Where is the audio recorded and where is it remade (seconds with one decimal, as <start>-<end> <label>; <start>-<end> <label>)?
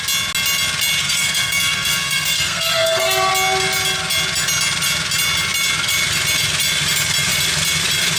0.0-1.0 recorded; 1.0-3.3 remade; 3.3-8.2 recorded